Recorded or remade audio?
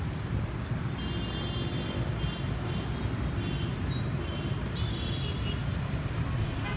recorded